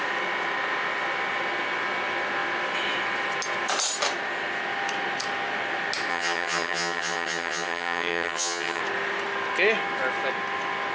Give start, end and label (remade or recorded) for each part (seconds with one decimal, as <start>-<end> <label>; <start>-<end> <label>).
0.0-6.1 recorded; 6.1-8.8 remade; 8.8-10.9 recorded